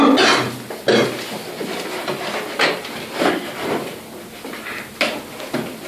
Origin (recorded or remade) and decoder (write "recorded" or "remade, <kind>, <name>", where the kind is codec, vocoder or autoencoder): recorded